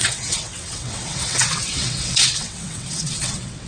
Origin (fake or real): fake